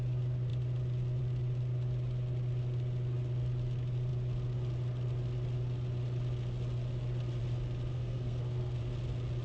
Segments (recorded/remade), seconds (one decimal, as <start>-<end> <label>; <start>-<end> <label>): 0.0-7.9 recorded; 7.9-8.8 remade; 8.8-9.4 recorded